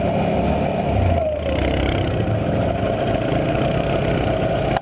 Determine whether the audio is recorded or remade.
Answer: recorded